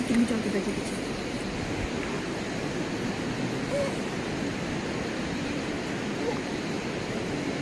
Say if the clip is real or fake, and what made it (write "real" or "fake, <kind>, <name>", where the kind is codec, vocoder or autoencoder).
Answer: real